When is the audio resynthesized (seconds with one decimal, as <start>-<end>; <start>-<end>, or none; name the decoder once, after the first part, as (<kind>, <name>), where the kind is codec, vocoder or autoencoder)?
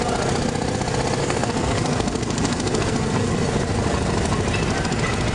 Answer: 1.2-3.3 (codec, SNAC)